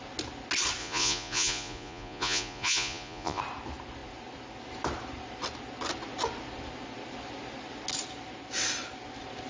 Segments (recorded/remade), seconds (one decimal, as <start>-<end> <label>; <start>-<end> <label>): 0.0-0.8 recorded; 0.8-3.4 remade; 3.4-9.5 recorded